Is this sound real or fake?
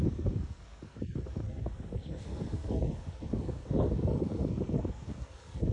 fake